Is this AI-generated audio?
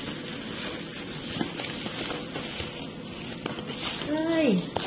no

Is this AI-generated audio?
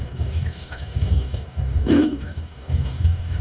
yes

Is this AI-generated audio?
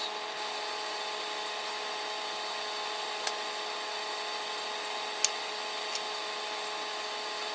no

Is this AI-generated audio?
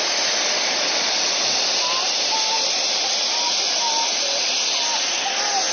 no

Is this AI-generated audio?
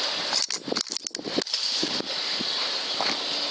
no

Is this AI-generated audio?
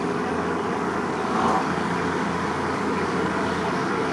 yes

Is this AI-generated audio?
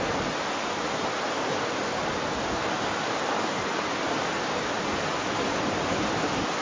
no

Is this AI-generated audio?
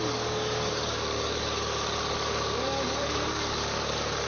yes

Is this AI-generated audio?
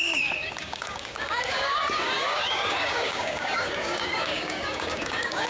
yes